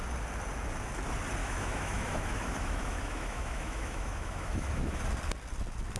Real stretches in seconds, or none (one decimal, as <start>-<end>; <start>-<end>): 0.0-1.4; 5.0-6.0